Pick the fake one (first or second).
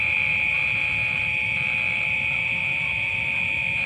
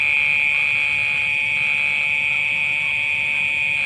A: first